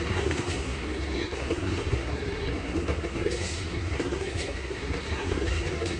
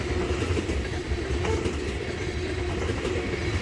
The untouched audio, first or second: second